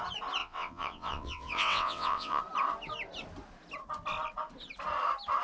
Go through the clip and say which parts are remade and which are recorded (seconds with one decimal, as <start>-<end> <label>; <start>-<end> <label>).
0.0-0.4 recorded; 0.4-2.4 remade; 2.4-5.4 recorded